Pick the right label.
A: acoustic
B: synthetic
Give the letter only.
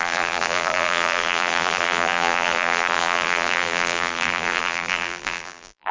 B